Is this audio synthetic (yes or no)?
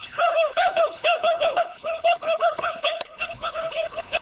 yes